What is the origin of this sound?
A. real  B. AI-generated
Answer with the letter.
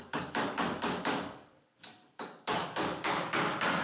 B